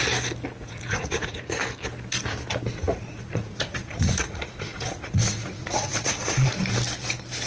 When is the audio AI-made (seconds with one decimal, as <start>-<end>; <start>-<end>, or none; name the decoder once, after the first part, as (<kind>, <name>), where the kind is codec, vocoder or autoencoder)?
0.6-1.6 (vocoder, Vocos); 2.7-6.6